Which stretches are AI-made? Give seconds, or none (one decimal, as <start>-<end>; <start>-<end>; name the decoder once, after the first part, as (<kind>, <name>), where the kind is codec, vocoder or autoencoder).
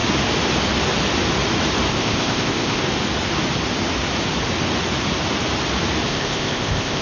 1.9-2.8 (codec, ZipCodec); 6.1-7.0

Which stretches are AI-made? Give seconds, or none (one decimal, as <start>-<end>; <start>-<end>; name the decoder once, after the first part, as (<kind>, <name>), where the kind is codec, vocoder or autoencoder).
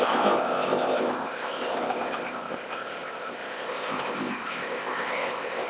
0.0-5.7 (codec, ZipCodec)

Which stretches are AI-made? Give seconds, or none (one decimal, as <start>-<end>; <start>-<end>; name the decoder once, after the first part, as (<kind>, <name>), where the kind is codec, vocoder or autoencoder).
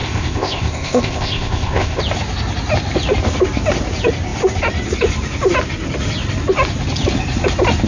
0.0-2.0 (codec, ZipCodec)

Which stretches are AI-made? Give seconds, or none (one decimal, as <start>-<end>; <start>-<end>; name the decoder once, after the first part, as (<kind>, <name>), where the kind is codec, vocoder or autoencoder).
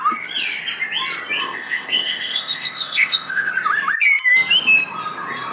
1.4-3.5 (codec, ZipCodec)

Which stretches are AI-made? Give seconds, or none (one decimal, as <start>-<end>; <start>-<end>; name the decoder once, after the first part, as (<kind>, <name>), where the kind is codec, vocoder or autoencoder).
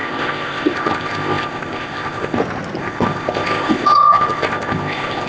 0.0-2.4 (codec, ZipCodec); 2.8-5.3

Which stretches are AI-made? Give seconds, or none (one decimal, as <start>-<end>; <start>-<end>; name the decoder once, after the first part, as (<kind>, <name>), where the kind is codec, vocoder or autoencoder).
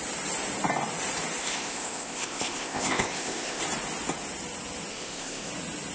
1.4-3.6 (codec, ZipCodec); 4.9-5.5